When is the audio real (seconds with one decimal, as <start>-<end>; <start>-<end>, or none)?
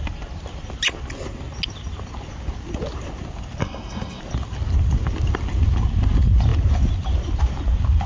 0.0-3.6; 4.2-8.1